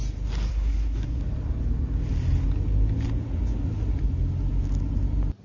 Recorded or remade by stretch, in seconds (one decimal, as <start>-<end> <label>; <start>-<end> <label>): 0.0-0.5 recorded; 0.5-1.2 remade; 1.2-5.4 recorded